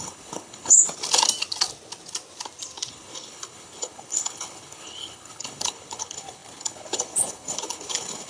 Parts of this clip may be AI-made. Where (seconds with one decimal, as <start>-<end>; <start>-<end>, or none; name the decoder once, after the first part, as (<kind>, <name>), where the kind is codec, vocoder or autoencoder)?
0.0-0.8 (codec, HILCodec); 2.9-8.3